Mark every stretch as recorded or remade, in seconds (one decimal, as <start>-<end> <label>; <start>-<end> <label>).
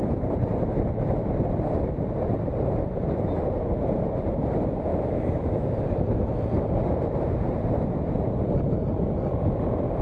0.0-4.9 recorded; 4.9-5.8 remade; 5.8-10.0 recorded